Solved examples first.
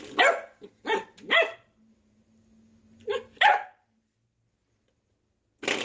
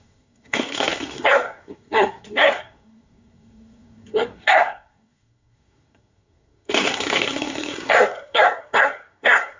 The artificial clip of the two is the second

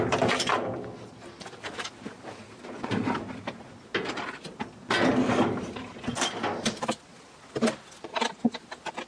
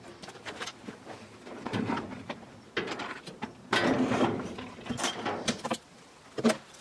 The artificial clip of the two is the second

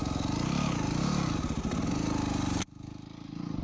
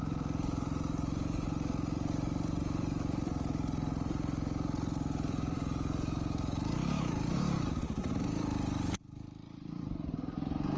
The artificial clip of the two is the second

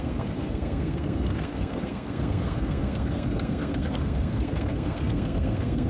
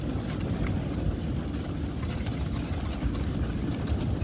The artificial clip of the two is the first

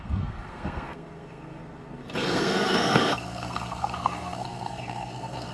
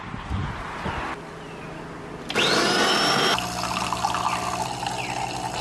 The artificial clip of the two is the first